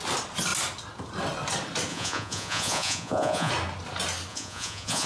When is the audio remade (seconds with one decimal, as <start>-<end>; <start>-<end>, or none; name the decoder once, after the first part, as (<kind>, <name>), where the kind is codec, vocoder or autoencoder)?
1.9-3.5 (vocoder, Vocos); 4.3-5.1

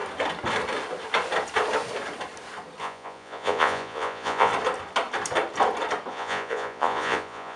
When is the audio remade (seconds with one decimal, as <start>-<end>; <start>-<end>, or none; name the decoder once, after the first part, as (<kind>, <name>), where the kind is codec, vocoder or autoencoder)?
2.8-4.5 (vocoder, Vocos); 6.1-7.6

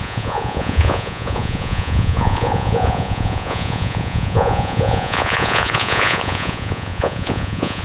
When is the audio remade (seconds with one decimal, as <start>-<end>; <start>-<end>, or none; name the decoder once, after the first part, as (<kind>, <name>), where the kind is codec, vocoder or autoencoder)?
0.0-7.8 (vocoder, Vocos)

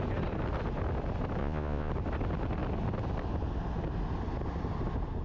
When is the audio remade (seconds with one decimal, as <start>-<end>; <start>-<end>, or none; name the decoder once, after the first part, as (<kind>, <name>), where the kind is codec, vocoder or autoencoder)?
1.4-1.9 (vocoder, Vocos)

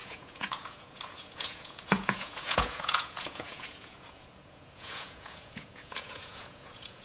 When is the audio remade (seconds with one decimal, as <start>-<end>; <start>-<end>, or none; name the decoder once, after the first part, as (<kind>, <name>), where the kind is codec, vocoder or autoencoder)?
0.0-7.0 (vocoder, Vocos)